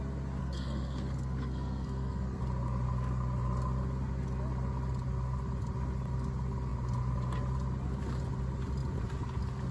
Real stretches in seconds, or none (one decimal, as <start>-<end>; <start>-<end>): 0.0-0.4; 2.4-9.7